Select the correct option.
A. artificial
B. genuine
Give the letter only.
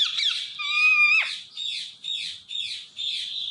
B